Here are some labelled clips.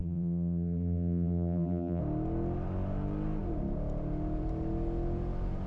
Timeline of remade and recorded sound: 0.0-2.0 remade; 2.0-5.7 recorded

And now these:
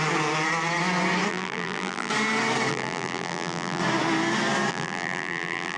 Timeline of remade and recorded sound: 0.0-1.3 recorded; 1.3-2.1 remade; 2.1-2.7 recorded; 2.7-3.8 remade; 3.8-4.7 recorded; 4.7-5.8 remade

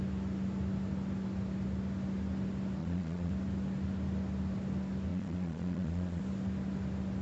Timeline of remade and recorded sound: 0.0-2.8 recorded; 2.8-3.3 remade; 3.3-5.1 recorded; 5.1-6.2 remade; 6.2-7.2 recorded

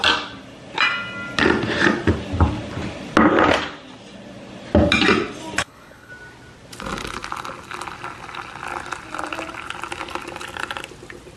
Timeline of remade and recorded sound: 0.0-5.6 recorded; 5.6-6.1 remade; 6.1-11.4 recorded

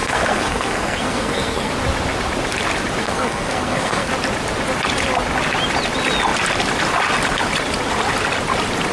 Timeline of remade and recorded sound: 0.0-1.7 remade; 1.7-3.0 recorded; 3.0-4.1 remade; 4.1-8.9 recorded

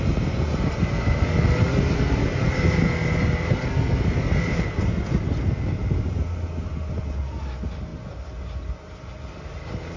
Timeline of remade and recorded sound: 0.0-10.0 recorded

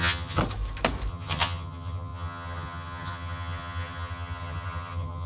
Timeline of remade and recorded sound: 0.0-0.4 remade; 0.4-1.1 recorded; 1.1-5.3 remade

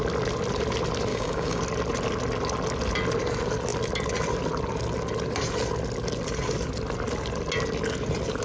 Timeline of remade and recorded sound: 0.0-1.1 recorded; 1.1-1.6 remade; 1.6-8.4 recorded